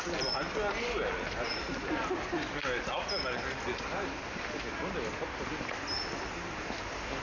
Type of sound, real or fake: real